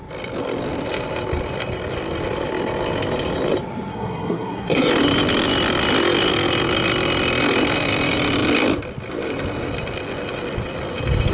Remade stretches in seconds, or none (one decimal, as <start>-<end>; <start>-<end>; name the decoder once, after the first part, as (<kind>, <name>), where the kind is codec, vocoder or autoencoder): 3.9-4.9 (codec, SNAC)